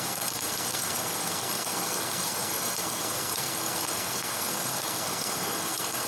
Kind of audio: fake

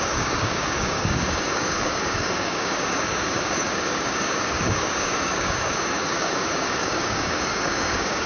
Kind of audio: fake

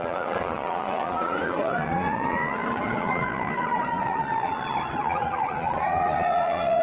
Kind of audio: fake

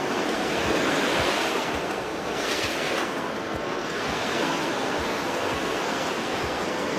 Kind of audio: fake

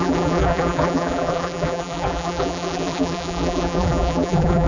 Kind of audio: fake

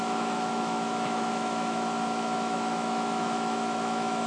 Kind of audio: fake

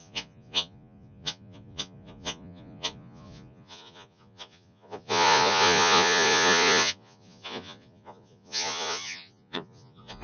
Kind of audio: fake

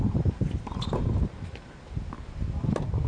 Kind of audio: real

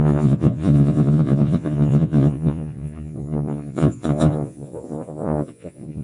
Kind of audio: fake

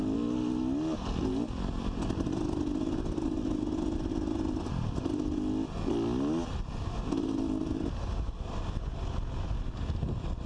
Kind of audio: real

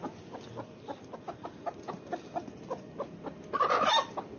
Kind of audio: real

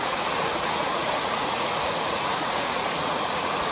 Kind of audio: fake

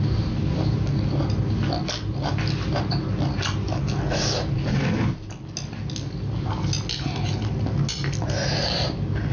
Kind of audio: real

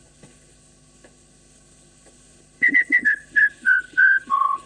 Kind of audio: fake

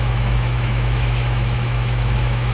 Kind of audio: fake